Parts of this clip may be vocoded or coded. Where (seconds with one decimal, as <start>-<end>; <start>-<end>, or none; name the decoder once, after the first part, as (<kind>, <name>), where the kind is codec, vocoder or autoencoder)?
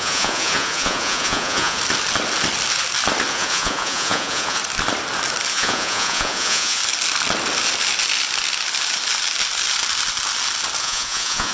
0.0-1.8 (vocoder, Vocos); 3.3-4.6; 5.5-6.8; 10.8-11.5